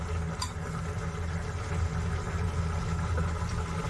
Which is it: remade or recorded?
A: recorded